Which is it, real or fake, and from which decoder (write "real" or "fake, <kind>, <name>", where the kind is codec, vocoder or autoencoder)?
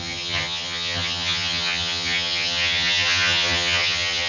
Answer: fake, vocoder, HiFi-GAN